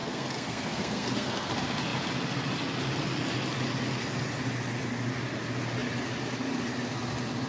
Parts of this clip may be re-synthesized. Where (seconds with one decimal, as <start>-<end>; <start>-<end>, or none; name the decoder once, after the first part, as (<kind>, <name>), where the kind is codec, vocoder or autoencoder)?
0.0-1.5 (codec, SNAC)